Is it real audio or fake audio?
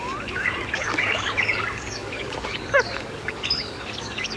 fake